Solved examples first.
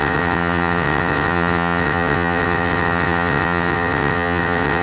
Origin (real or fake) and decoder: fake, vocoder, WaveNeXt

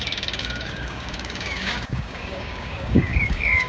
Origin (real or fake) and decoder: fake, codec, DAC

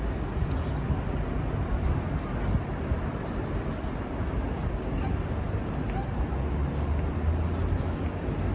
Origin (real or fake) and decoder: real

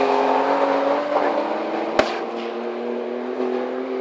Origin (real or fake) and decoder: real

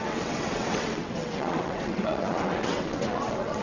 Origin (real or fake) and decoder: fake, vocoder, WaveNeXt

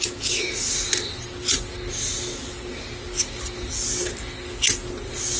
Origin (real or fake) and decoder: real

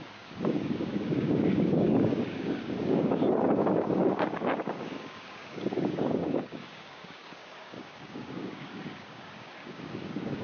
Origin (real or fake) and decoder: fake, codec, DAC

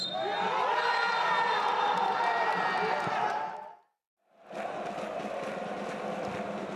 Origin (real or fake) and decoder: real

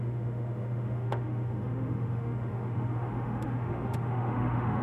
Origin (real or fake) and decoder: fake, autoencoder, DAC-VAE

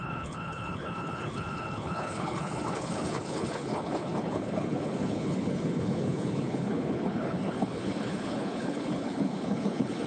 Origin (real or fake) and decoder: fake, codec, HILCodec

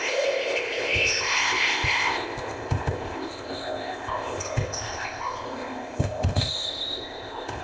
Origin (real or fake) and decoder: fake, codec, ZipCodec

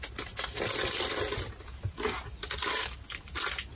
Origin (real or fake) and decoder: real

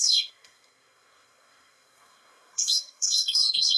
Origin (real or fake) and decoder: fake, codec, SNAC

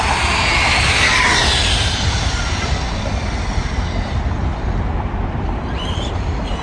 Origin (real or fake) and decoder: real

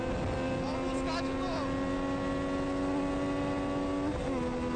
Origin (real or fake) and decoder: real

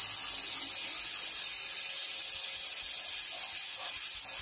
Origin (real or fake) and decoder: real